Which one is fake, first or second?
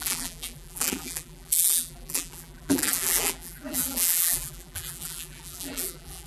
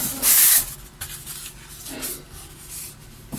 first